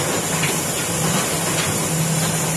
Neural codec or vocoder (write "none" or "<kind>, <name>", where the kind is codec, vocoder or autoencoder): none